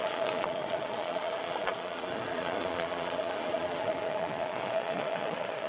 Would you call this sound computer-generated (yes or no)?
yes